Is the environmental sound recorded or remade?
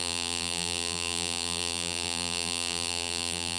remade